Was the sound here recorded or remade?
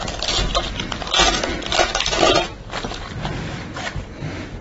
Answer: recorded